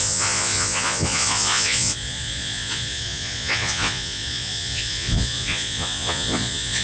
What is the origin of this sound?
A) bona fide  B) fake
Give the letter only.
B